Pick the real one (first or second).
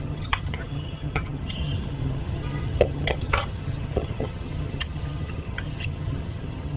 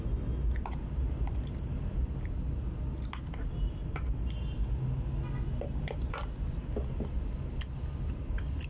second